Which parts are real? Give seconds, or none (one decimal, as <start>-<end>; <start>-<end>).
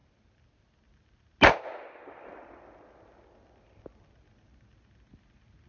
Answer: 0.0-5.7